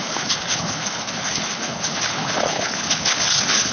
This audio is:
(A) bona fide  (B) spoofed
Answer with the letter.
B